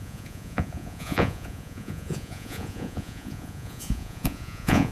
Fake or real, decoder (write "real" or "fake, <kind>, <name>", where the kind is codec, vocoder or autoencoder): fake, vocoder, Vocos